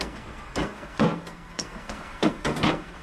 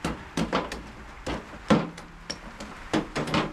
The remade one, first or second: first